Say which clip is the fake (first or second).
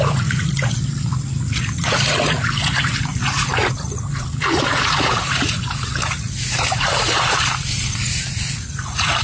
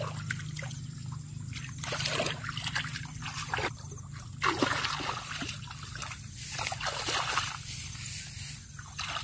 first